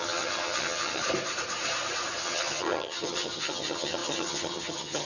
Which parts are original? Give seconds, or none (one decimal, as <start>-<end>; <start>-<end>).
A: 1.0-2.2